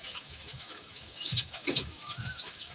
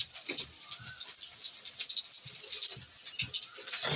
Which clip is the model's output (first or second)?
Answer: first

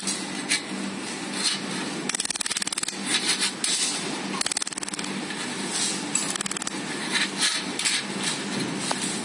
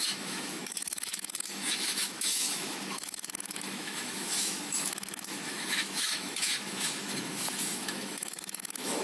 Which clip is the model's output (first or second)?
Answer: second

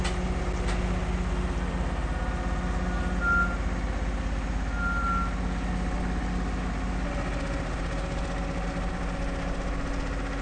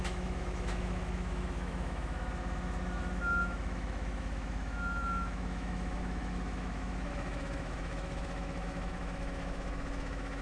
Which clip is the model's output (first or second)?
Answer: second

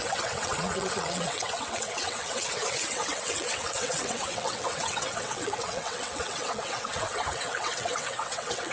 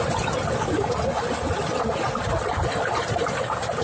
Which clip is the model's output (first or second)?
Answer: first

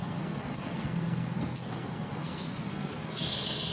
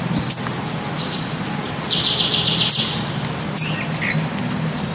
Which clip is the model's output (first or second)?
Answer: first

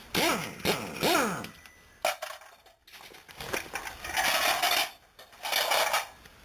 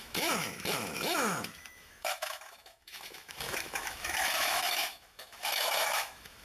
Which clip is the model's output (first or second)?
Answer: second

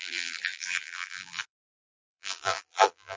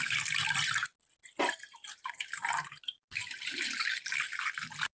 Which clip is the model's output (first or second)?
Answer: first